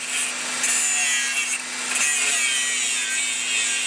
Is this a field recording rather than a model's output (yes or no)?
yes